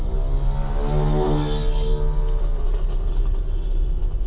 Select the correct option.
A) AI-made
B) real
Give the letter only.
B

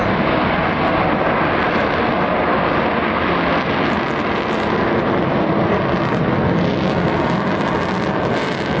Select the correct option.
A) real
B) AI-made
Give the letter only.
A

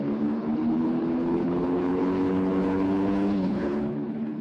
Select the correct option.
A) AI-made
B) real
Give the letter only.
A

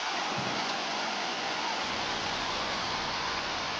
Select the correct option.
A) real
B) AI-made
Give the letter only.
B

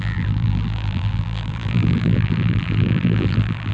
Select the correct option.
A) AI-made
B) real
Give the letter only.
A